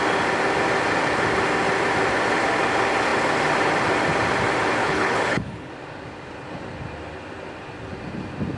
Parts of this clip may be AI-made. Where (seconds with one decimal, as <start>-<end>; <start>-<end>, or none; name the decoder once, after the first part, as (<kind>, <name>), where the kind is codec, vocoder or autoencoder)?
4.8-5.7 (codec, HILCodec)